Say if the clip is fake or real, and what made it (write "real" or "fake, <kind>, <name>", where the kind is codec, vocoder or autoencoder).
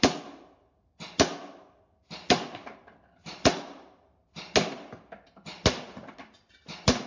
real